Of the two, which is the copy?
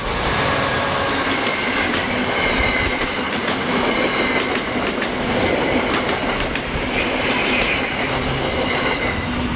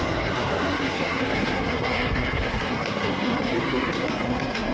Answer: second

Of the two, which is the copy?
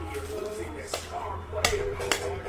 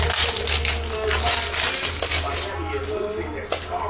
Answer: first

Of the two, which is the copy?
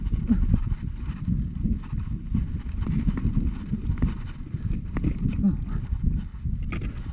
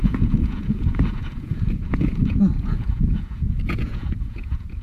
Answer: second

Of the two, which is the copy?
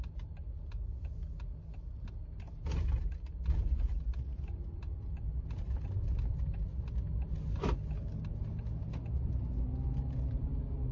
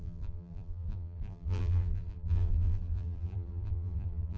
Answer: second